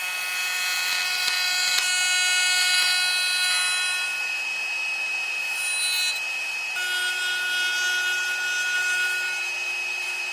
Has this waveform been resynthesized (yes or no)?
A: no